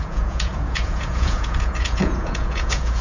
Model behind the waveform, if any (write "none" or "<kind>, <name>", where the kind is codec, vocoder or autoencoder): vocoder, Vocos